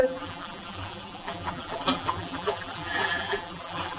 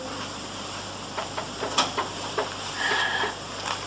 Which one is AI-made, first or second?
first